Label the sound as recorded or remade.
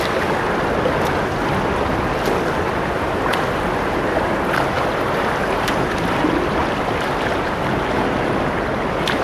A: recorded